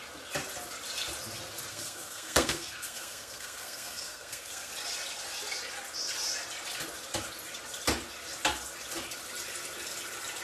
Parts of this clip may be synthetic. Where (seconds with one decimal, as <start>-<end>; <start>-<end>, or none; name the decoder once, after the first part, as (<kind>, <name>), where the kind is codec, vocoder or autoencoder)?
1.7-4.7 (codec, SNAC)